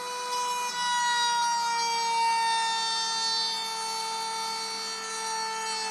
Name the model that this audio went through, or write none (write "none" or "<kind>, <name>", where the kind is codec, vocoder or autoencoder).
none